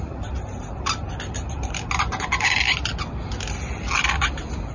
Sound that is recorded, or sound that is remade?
recorded